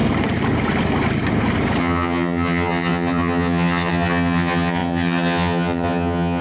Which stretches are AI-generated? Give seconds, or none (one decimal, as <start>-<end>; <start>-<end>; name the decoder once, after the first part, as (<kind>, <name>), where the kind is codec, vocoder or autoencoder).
1.8-6.4 (vocoder, HiFi-GAN)